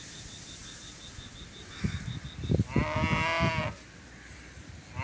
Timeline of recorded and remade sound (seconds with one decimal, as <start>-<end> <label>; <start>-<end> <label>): 0.0-5.0 recorded